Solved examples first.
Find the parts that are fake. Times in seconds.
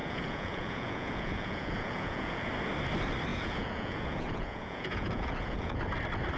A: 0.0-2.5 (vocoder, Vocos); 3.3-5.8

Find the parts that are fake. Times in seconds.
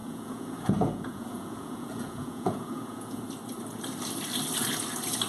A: 0.0-3.2 (vocoder, Vocos)